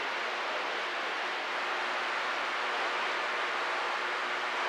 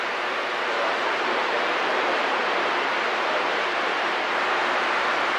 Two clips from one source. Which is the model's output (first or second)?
second